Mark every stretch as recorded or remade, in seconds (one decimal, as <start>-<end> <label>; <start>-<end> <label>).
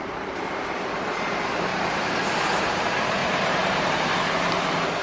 0.0-5.0 remade